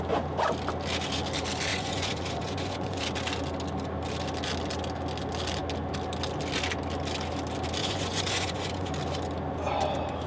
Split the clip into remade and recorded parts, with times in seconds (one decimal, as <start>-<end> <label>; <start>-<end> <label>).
0.0-1.7 recorded; 1.7-3.0 remade; 3.0-7.8 recorded; 7.8-8.9 remade; 8.9-10.3 recorded